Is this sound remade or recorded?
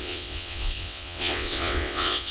remade